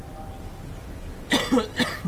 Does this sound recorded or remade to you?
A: recorded